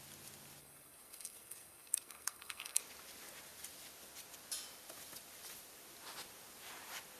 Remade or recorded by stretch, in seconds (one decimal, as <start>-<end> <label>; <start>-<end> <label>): 0.0-0.6 recorded; 0.6-2.8 remade; 2.8-7.2 recorded